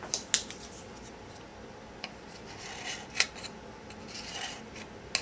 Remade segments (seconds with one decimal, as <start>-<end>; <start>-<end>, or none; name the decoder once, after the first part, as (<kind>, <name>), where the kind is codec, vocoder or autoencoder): 1.5-4.6 (vocoder, BigVGAN v2)